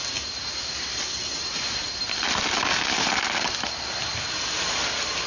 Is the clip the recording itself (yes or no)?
yes